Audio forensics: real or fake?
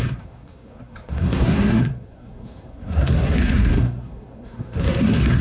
fake